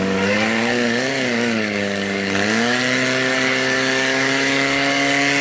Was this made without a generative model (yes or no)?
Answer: no